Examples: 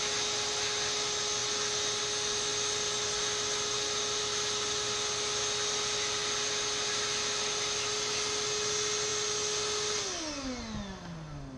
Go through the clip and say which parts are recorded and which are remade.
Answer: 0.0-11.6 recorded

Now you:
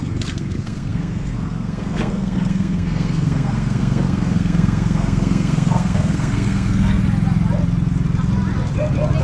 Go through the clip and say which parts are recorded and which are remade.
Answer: 0.0-7.0 remade; 7.0-9.2 recorded

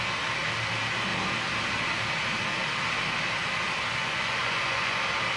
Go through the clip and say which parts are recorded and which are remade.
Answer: 0.0-4.0 recorded; 4.0-5.0 remade; 5.0-5.4 recorded

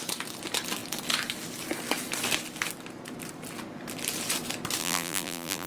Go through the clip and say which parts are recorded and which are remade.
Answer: 0.0-4.8 recorded; 4.8-5.7 remade

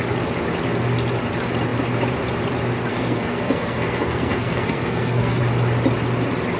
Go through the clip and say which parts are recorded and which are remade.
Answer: 0.0-2.9 recorded; 2.9-5.4 remade; 5.4-6.6 recorded